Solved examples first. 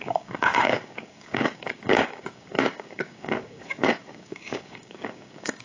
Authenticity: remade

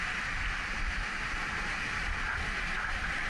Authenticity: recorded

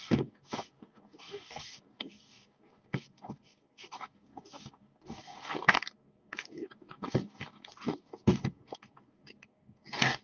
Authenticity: remade